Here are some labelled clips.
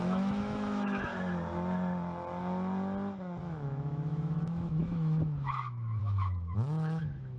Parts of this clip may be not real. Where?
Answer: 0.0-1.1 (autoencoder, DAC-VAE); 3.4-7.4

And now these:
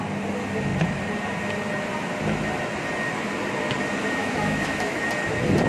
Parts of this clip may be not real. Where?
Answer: 4.2-5.0 (autoencoder, DAC-VAE)

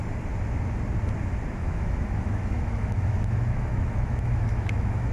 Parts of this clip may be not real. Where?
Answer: 1.6-5.1 (autoencoder, DAC-VAE)

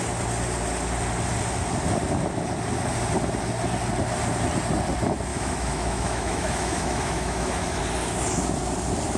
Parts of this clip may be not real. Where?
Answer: 5.3-7.8 (autoencoder, DAC-VAE)

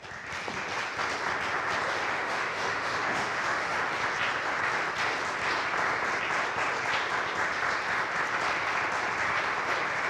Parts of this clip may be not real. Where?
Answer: 2.1-3.8 (autoencoder, DAC-VAE)

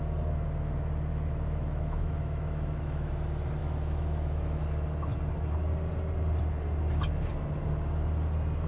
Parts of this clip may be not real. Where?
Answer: 1.1-3.1 (autoencoder, DAC-VAE); 3.6-4.6

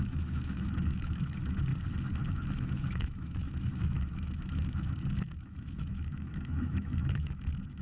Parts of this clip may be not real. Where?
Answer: 0.0-1.7 (autoencoder, DAC-VAE); 2.3-7.8

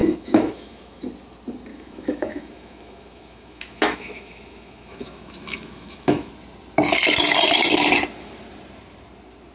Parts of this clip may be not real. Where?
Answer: 0.0-1.0 (autoencoder, DAC-VAE); 1.7-6.3